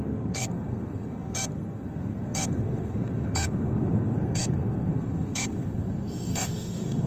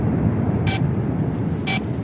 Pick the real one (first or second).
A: second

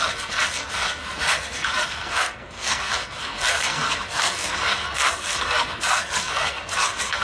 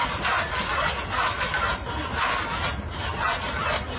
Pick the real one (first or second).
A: second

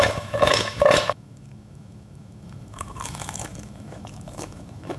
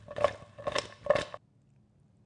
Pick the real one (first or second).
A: second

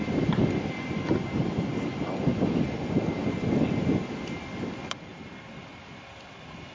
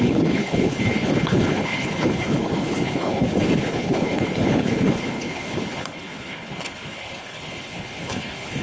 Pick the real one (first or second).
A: first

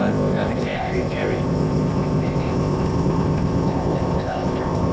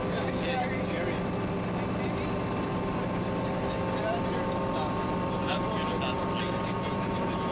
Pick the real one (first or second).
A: second